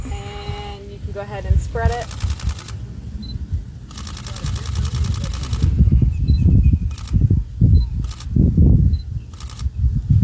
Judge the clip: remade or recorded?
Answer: recorded